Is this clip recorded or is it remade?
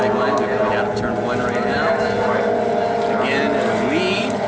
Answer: recorded